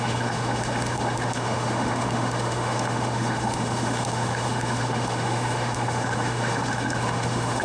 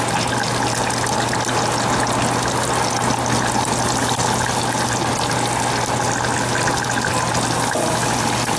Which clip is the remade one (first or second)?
first